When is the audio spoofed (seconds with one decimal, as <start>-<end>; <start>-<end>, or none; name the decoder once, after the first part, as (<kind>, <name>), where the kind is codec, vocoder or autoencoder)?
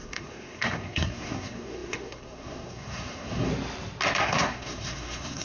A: 0.0-3.5 (codec, SNAC); 4.2-5.4